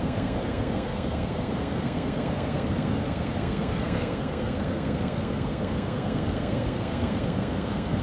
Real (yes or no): no